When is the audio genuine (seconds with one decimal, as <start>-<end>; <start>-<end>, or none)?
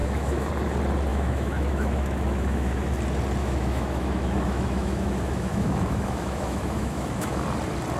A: 0.5-1.1; 2.9-3.4; 7.4-8.0